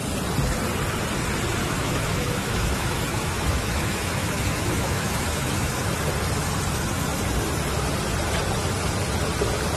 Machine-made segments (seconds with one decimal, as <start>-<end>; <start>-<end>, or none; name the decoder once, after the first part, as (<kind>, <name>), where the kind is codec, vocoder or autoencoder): 1.6-5.9 (autoencoder, DAC-VAE)